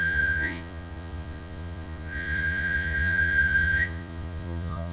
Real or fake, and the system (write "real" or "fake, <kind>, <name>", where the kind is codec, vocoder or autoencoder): fake, vocoder, Vocos